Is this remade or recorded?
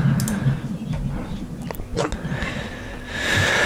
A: recorded